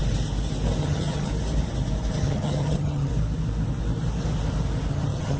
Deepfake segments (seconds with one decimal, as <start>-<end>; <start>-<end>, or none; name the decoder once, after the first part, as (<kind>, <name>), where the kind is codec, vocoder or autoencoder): 0.8-1.3 (vocoder, HiFi-GAN); 2.1-3.1; 4.9-5.4